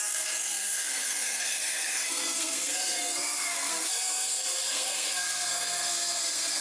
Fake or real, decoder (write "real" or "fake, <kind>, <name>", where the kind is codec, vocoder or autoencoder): fake, codec, SNAC